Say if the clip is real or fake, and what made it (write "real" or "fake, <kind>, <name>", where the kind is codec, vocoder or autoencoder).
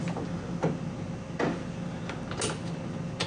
real